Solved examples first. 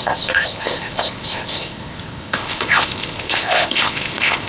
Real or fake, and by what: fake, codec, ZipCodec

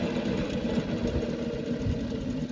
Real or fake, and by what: real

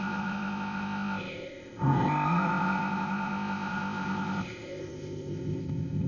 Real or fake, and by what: fake, codec, ZipCodec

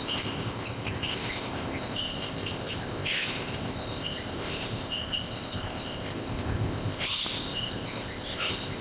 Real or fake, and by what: fake, codec, ZipCodec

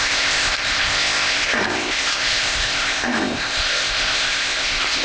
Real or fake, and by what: fake, codec, ZipCodec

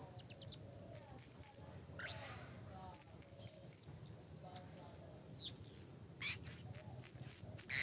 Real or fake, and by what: real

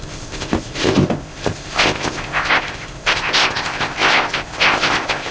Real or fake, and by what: fake, codec, ZipCodec